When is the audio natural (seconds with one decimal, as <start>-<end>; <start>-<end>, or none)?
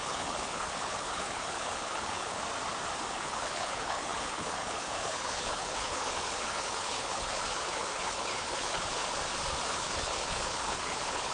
2.4-3.1; 9.0-9.7